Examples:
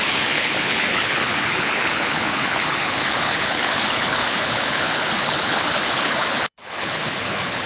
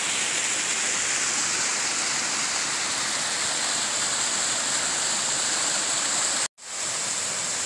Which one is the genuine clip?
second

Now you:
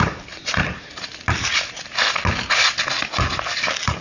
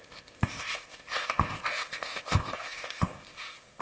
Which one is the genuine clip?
first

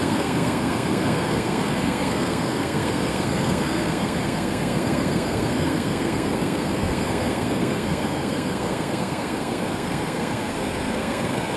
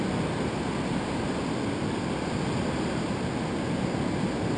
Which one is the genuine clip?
second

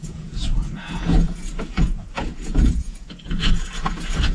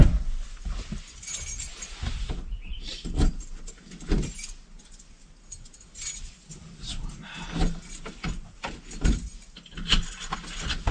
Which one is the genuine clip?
second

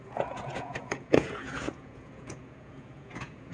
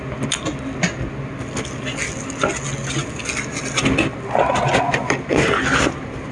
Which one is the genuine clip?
second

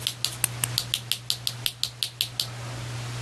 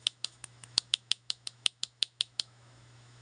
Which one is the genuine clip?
first